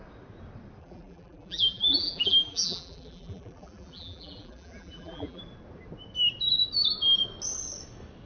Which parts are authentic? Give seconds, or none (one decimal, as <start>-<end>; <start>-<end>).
0.0-0.8; 5.4-8.3

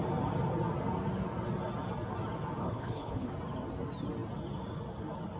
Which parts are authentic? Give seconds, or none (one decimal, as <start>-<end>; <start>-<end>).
0.0-2.6; 3.3-5.4

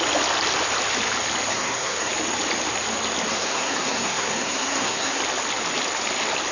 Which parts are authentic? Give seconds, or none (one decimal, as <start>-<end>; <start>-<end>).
0.0-1.5; 2.1-3.3; 5.2-6.5

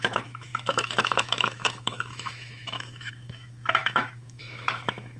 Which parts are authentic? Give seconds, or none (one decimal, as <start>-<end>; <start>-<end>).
none

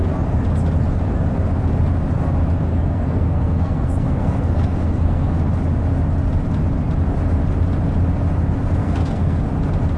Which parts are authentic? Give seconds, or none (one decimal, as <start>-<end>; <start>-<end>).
0.0-2.7; 5.4-8.8; 9.4-10.0

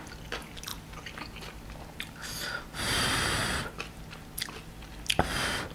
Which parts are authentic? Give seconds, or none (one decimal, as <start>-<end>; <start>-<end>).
0.0-5.7

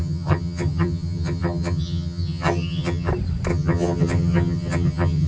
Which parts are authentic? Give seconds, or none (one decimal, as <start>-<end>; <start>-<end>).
3.1-3.5